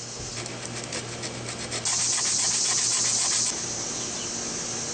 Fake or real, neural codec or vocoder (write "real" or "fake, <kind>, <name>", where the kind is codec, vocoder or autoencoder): real